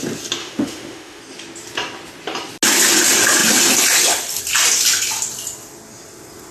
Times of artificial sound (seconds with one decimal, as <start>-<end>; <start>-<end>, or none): 0.4-1.2